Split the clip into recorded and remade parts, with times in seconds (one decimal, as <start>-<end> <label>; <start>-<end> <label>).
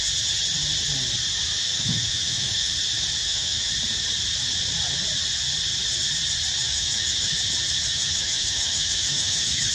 0.0-1.6 recorded; 1.6-2.7 remade; 2.7-3.2 recorded; 3.2-3.7 remade; 3.7-6.7 recorded; 6.7-7.4 remade; 7.4-7.9 recorded; 7.9-9.7 remade